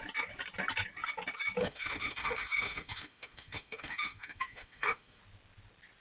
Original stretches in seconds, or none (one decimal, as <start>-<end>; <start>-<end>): 0.0-1.6; 5.2-6.0